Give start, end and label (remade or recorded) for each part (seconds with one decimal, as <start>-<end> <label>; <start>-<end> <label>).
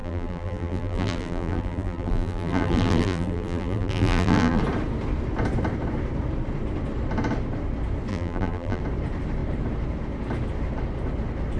0.0-4.6 remade; 4.6-8.1 recorded; 8.1-8.8 remade; 8.8-11.6 recorded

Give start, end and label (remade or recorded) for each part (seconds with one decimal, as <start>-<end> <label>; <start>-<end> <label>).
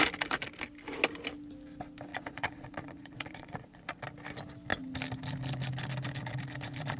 0.0-2.1 recorded; 2.1-4.0 remade; 4.0-7.0 recorded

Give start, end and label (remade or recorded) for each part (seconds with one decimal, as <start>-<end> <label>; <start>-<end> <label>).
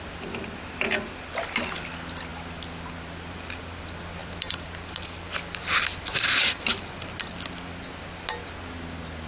0.0-4.2 recorded; 4.2-5.3 remade; 5.3-9.3 recorded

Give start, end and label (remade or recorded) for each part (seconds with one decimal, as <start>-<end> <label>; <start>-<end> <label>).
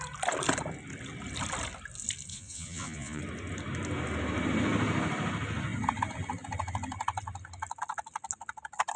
0.0-2.3 recorded; 2.3-3.2 remade; 3.2-9.0 recorded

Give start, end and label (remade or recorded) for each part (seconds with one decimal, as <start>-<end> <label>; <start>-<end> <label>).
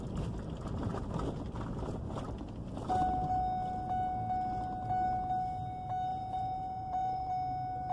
0.0-6.1 recorded; 6.1-7.3 remade; 7.3-7.9 recorded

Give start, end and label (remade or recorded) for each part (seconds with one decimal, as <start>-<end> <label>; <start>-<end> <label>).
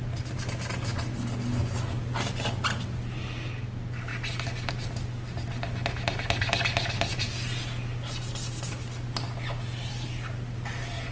0.0-11.1 recorded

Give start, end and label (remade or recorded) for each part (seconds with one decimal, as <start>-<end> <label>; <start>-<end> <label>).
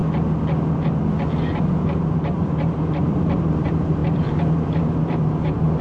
0.0-1.8 recorded; 1.8-5.8 remade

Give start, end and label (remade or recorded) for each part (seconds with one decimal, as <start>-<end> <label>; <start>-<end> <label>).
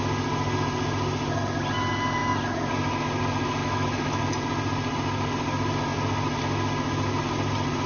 0.0-3.6 recorded; 3.6-4.2 remade; 4.2-7.9 recorded